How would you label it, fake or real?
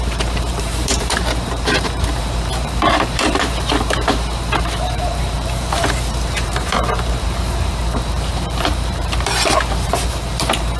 fake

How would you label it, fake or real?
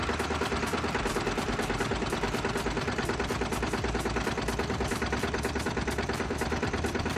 fake